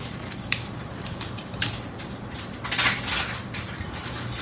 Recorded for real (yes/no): yes